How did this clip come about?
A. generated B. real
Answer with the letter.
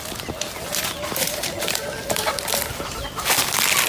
B